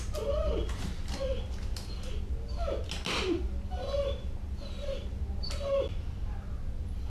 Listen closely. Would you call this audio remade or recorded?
recorded